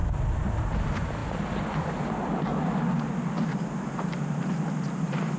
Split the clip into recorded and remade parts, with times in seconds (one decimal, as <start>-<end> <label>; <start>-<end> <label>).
0.0-5.4 recorded